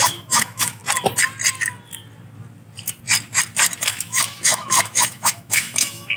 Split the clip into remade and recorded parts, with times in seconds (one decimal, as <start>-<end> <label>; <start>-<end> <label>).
0.0-0.8 remade; 0.8-3.9 recorded; 3.9-6.2 remade